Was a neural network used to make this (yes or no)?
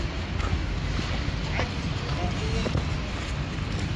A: no